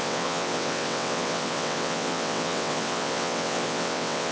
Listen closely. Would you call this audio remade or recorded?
remade